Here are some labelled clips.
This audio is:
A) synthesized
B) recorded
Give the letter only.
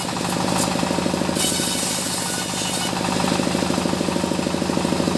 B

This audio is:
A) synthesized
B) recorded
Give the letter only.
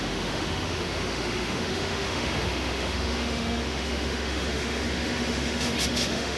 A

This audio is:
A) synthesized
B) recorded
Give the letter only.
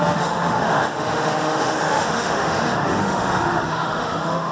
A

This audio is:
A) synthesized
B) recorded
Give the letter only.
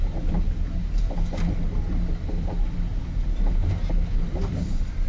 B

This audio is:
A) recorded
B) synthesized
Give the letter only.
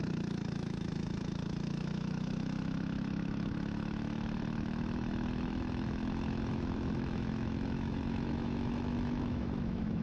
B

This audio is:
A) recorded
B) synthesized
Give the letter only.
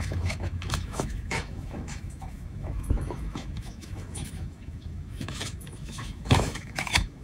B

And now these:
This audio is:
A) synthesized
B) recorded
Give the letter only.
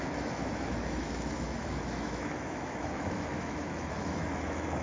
A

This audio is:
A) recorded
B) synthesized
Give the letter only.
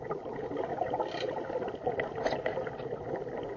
A